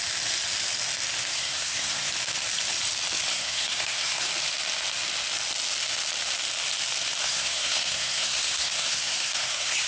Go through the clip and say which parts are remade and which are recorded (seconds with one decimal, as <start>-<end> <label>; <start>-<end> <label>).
0.0-1.3 recorded; 1.3-2.1 remade; 2.1-3.3 recorded; 3.3-4.3 remade; 4.3-7.2 recorded; 7.2-9.9 remade